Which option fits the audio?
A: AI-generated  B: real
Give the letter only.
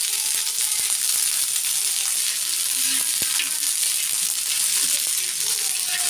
B